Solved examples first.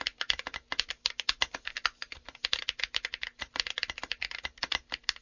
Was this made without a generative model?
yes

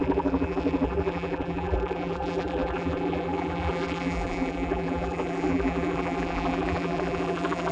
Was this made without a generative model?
no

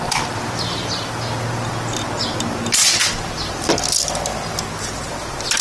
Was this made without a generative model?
yes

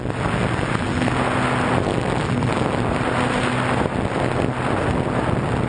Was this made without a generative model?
yes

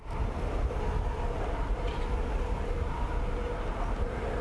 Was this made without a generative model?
yes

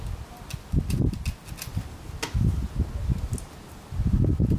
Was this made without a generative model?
yes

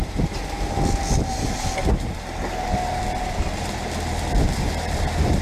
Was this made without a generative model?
yes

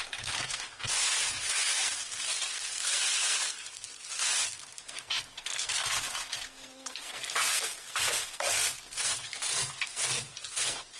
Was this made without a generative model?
no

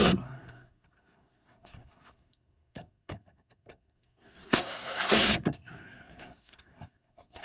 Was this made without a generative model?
no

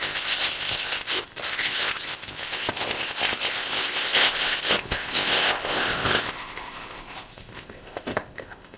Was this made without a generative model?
no